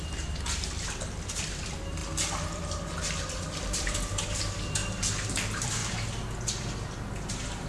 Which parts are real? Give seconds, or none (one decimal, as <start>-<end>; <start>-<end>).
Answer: 2.0-3.3; 4.8-5.3